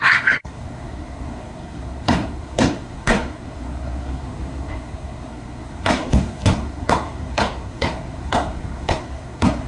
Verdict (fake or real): fake